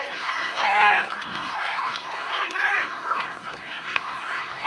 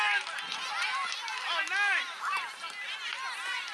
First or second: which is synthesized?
first